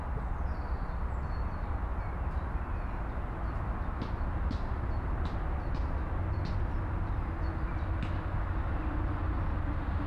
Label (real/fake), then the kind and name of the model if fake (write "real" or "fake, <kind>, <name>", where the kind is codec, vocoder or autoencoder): real